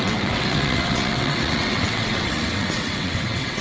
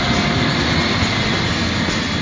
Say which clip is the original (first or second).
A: second